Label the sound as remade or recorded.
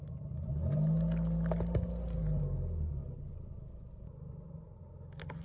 recorded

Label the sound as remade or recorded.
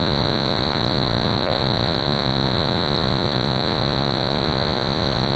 remade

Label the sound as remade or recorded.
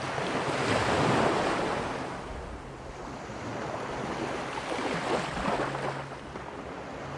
recorded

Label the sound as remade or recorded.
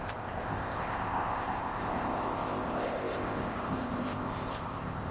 remade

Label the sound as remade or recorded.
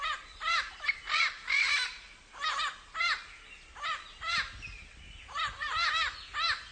recorded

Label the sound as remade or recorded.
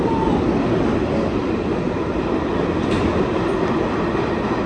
recorded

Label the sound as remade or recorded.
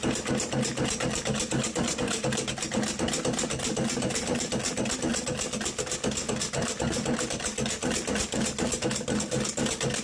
recorded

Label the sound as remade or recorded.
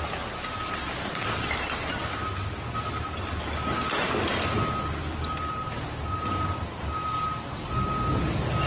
recorded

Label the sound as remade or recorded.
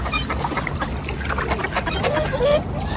recorded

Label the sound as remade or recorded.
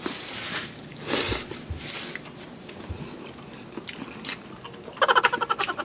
recorded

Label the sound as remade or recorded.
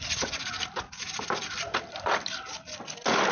recorded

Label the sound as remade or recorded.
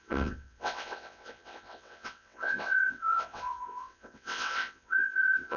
remade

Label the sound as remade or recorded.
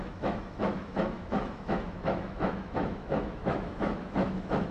remade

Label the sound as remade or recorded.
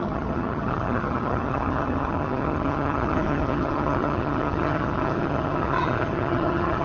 remade